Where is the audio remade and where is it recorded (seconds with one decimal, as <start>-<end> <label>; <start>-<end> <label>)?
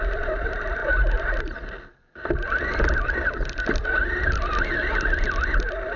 0.0-6.0 remade